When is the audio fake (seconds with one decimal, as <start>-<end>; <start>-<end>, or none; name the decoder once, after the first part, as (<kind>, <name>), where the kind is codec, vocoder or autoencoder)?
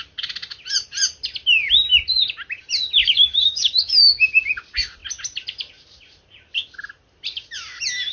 3.0-4.0 (autoencoder, DAC-VAE)